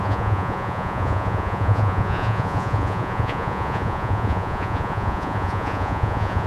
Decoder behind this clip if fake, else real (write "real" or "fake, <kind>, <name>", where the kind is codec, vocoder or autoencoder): fake, vocoder, Vocos